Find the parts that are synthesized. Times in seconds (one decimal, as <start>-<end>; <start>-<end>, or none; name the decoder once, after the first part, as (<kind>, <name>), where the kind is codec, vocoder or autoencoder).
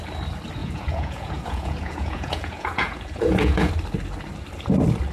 0.6-3.7 (vocoder, Vocos)